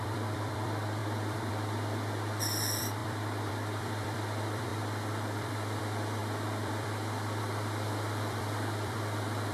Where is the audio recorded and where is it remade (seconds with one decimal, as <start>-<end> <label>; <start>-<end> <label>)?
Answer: 0.0-9.5 remade